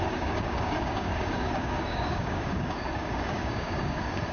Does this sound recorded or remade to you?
remade